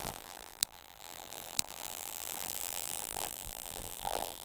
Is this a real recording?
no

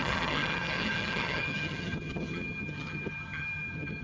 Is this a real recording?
no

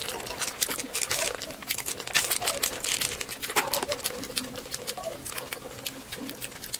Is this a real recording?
yes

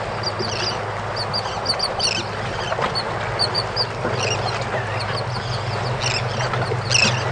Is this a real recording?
yes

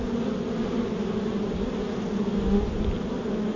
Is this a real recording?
yes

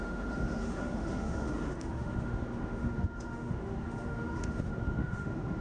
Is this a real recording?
no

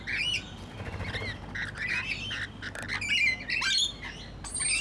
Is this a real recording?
yes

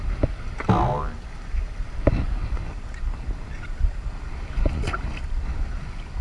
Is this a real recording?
yes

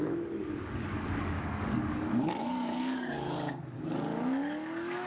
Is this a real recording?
no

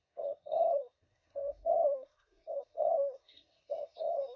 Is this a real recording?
no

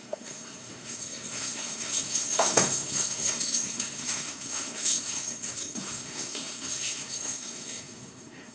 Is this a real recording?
no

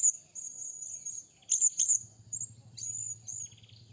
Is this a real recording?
yes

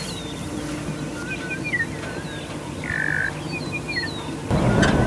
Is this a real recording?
yes